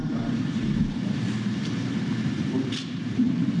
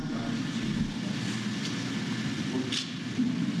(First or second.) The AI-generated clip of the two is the first